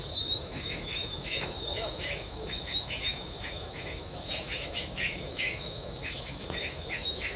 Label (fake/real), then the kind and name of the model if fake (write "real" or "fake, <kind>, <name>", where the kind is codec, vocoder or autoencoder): fake, autoencoder, DAC-VAE